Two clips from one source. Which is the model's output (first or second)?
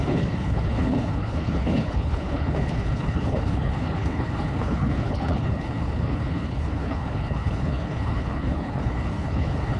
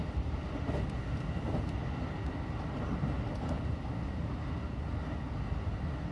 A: first